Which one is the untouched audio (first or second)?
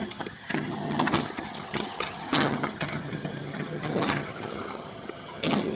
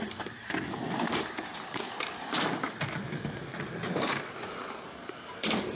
second